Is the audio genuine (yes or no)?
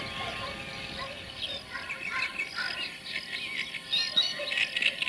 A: yes